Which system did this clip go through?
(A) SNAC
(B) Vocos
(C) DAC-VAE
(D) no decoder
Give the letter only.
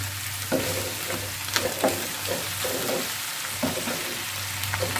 D